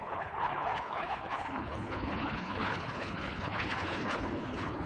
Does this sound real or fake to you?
fake